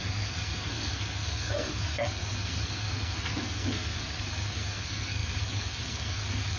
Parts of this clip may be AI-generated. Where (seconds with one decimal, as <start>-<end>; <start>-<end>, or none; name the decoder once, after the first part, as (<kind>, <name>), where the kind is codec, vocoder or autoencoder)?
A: 0.0-6.6 (codec, SNAC)